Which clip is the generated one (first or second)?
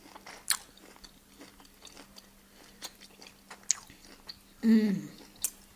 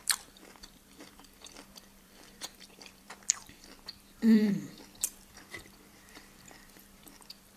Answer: second